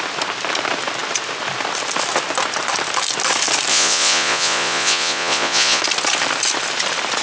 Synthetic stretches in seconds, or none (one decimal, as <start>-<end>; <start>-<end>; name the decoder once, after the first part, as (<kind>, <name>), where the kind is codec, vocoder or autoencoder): 3.7-5.8 (vocoder, Vocos)